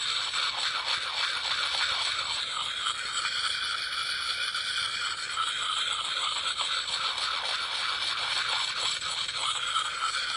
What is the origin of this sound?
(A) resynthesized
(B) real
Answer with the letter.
B